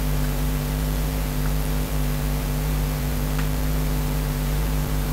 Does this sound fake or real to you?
fake